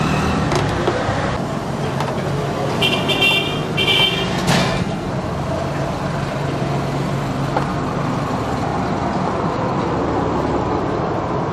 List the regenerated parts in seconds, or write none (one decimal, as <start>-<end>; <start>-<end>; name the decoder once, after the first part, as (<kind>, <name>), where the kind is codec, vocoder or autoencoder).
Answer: 4.6-5.1 (codec, SNAC)